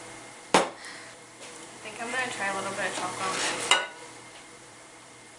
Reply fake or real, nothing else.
fake